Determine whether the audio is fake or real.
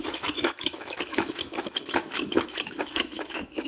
fake